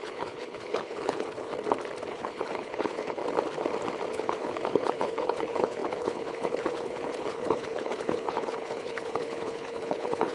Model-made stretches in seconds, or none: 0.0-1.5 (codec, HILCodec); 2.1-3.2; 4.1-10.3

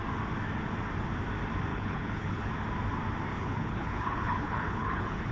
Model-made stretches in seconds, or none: 1.7-2.5 (codec, HILCodec); 3.3-5.3

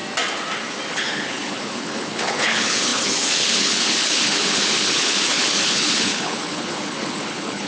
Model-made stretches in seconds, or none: 0.9-7.7 (codec, HILCodec)

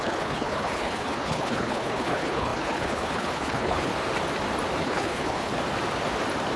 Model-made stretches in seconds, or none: 0.0-3.9 (codec, HILCodec); 4.8-5.5